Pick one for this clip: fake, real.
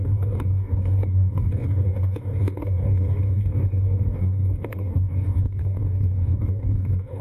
fake